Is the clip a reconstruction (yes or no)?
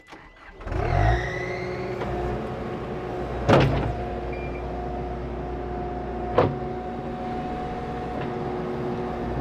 no